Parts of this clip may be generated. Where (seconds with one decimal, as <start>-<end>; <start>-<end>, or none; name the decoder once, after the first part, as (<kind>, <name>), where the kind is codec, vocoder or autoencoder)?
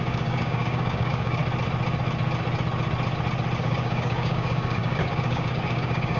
0.0-1.4 (codec, DAC); 3.6-6.2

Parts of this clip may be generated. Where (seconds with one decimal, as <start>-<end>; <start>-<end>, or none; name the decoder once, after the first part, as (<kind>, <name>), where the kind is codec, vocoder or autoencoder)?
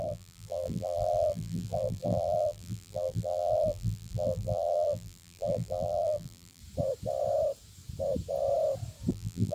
0.0-6.6 (vocoder, BigVGAN v2); 9.1-9.5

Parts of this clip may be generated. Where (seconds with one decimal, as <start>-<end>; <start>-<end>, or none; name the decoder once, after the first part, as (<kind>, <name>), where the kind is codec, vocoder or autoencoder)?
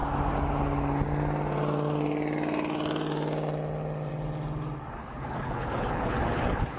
5.0-6.8 (codec, HILCodec)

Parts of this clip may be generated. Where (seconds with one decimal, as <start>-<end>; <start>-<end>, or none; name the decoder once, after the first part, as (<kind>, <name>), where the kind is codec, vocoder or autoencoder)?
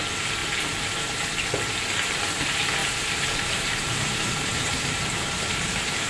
2.8-6.1 (vocoder, BigVGAN v2)